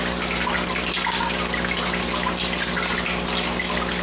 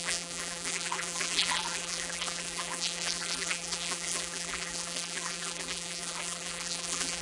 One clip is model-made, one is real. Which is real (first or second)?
first